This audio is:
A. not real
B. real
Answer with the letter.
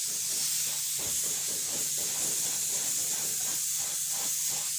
B